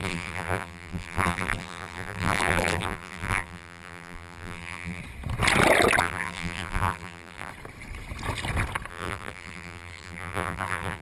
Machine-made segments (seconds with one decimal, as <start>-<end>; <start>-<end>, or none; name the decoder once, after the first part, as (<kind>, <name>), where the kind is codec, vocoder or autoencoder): 0.0-5.0 (vocoder, BigVGAN v2); 6.0-7.5; 8.9-11.0